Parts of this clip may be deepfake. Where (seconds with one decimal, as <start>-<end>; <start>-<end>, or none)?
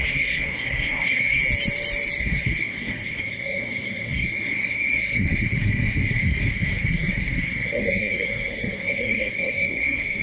0.0-1.4; 2.2-10.2